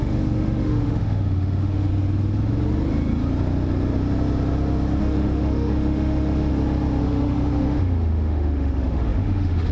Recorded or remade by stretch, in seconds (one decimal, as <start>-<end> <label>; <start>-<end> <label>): 0.0-1.9 remade; 1.9-5.0 recorded; 5.0-6.5 remade; 6.5-7.0 recorded; 7.0-9.7 remade